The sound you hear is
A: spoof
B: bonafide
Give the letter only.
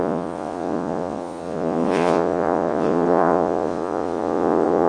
A